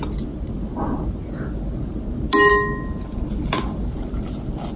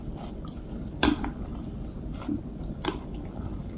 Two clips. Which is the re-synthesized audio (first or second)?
second